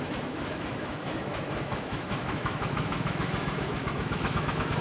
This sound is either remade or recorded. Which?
remade